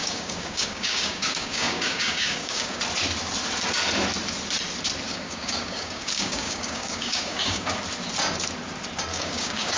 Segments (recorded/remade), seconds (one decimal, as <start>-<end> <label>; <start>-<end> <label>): 0.0-2.8 remade; 2.8-5.1 recorded; 5.1-7.7 remade; 7.7-9.1 recorded; 9.1-9.8 remade